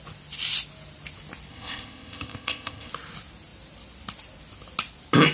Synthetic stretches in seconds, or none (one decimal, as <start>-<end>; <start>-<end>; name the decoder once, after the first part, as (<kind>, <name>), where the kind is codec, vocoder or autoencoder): 1.5-2.9 (codec, ZipCodec)